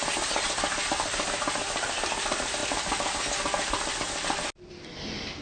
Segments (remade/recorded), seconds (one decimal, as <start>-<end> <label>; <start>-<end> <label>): 0.0-5.4 recorded